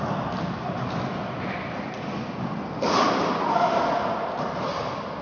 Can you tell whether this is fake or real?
real